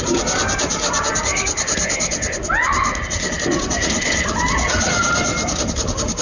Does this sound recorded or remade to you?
remade